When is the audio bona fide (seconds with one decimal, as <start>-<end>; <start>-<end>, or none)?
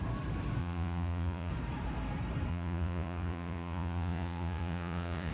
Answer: 0.0-0.6; 1.5-2.5